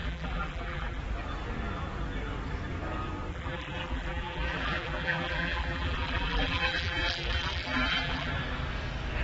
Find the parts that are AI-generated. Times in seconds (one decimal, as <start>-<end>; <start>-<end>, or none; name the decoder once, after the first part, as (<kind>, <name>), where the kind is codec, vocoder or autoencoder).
0.0-1.0 (vocoder, BigVGAN v2); 3.3-8.3